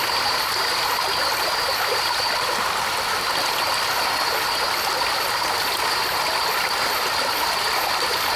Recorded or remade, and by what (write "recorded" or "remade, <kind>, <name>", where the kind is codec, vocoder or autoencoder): recorded